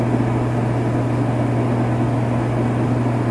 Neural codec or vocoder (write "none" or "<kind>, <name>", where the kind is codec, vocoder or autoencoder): none